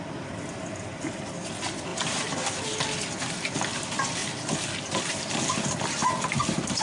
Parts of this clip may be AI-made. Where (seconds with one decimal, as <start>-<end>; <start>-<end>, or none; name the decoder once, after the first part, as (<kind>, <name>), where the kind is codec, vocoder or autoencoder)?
0.0-1.9 (vocoder, BigVGAN v2); 3.3-4.2; 4.9-6.8